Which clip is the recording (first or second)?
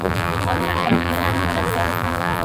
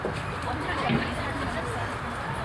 second